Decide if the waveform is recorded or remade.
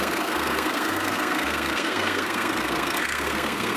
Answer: remade